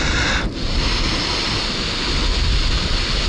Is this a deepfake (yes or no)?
no